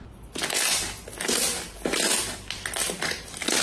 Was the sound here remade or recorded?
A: recorded